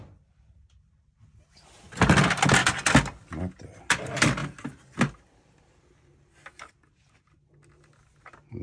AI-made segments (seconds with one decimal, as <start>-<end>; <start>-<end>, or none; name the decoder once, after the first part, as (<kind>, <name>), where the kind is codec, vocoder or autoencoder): none